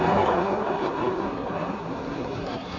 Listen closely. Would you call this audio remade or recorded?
remade